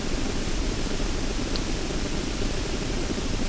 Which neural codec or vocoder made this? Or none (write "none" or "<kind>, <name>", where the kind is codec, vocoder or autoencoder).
none